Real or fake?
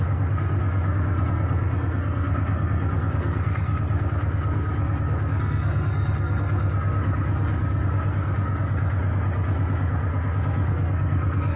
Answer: fake